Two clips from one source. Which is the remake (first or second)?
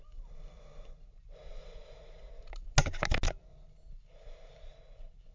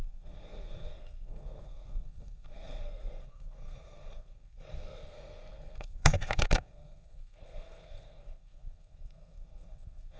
second